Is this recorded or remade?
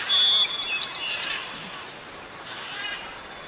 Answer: recorded